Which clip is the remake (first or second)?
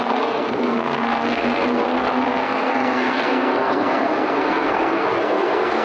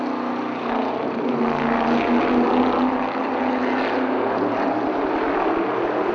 first